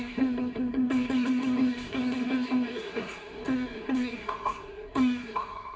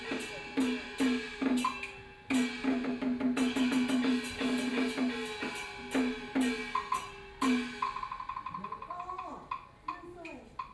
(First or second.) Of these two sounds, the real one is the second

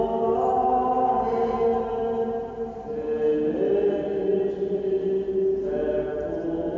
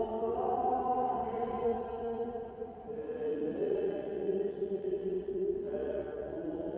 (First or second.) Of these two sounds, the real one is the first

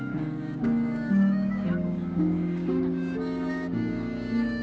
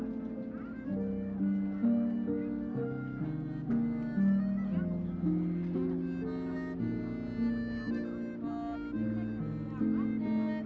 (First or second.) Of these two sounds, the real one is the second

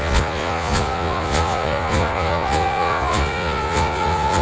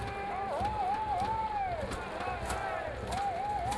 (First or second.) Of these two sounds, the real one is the second